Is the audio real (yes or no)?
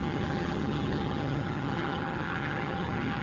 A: no